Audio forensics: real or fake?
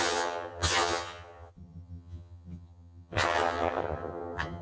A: fake